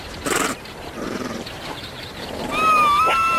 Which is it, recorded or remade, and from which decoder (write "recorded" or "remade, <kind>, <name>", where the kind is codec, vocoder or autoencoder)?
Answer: remade, vocoder, BigVGAN v2